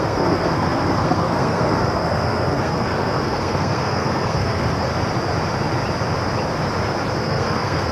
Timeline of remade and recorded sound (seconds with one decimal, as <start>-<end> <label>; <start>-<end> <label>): 0.0-4.9 remade; 4.9-7.2 recorded; 7.2-7.9 remade

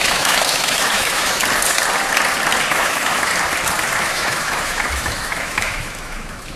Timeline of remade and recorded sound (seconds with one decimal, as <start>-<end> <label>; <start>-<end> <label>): 0.0-1.4 remade; 1.4-2.7 recorded; 2.7-3.3 remade; 3.3-4.0 recorded; 4.0-6.6 remade

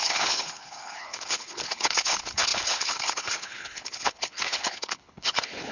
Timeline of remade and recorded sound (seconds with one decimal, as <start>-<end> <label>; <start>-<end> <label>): 0.0-5.7 remade